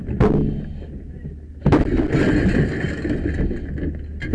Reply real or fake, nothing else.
real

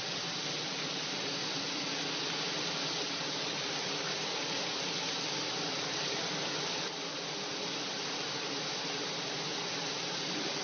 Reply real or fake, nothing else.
real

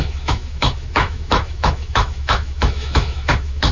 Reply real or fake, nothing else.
fake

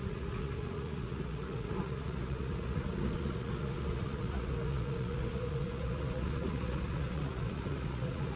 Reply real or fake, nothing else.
fake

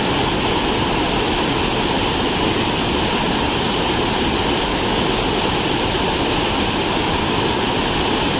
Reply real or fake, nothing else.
real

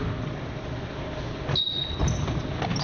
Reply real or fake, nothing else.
real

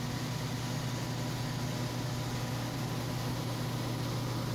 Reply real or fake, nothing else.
real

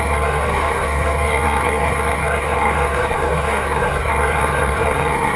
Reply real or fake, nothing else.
fake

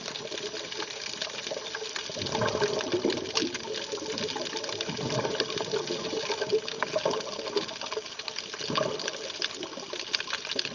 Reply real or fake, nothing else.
real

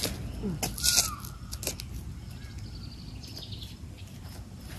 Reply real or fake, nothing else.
real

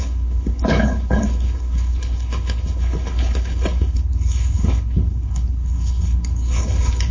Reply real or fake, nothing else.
fake